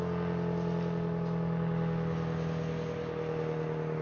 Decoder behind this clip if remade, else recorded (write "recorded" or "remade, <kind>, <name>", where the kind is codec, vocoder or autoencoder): recorded